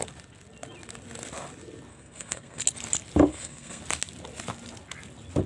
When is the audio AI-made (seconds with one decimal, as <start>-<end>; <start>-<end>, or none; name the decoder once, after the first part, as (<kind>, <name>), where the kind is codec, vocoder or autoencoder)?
1.9-2.6 (codec, SNAC); 3.3-3.8